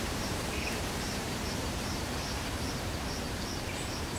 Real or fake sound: fake